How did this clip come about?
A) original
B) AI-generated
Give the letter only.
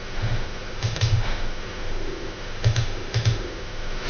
B